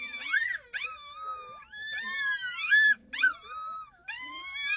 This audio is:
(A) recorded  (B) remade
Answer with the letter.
A